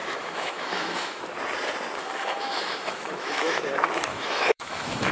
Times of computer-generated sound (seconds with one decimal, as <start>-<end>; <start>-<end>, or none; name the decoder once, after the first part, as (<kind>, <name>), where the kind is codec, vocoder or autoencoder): 0.0-1.2 (autoencoder, DAC-VAE); 2.0-3.6; 4.1-5.1